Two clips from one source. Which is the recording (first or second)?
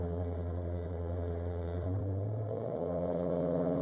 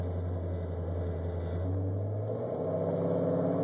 second